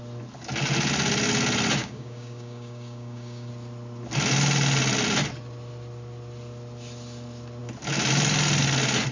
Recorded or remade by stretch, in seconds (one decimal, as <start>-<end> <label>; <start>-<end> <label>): 0.0-1.8 recorded; 1.8-3.5 remade; 3.5-9.1 recorded

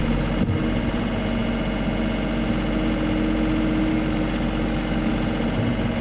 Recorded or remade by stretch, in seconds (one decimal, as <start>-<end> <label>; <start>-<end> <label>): 0.0-3.9 recorded; 3.9-5.1 remade; 5.1-6.0 recorded

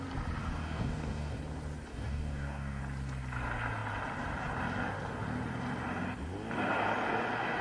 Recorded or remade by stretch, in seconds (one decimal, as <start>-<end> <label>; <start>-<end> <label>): 0.0-0.4 recorded; 0.4-1.4 remade; 1.4-1.9 recorded; 1.9-2.8 remade; 2.8-7.6 recorded

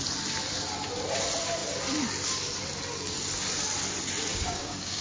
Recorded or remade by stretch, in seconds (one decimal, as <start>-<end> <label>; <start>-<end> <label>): 0.0-4.3 recorded; 4.3-5.0 remade

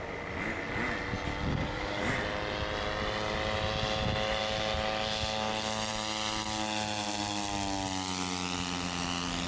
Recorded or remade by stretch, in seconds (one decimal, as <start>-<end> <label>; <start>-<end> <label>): 0.0-1.5 recorded; 1.5-2.1 remade; 2.1-9.5 recorded